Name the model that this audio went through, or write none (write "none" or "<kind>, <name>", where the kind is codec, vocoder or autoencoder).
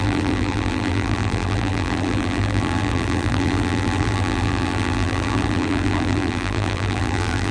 vocoder, BigVGAN v2